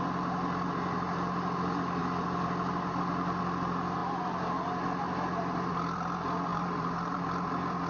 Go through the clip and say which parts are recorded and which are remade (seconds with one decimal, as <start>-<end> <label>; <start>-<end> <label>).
0.0-6.5 recorded; 6.5-7.2 remade; 7.2-7.9 recorded